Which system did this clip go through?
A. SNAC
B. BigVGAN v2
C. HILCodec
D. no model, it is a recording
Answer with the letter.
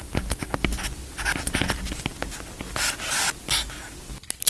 D